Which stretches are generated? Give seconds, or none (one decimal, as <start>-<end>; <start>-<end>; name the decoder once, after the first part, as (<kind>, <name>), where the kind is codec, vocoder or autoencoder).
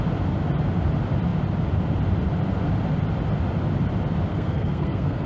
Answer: 4.3-5.3 (codec, SNAC)